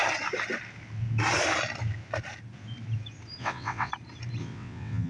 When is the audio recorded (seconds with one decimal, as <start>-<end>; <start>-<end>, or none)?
0.0-3.4; 3.9-4.4